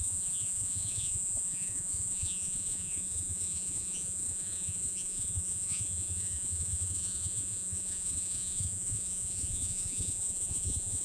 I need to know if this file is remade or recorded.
remade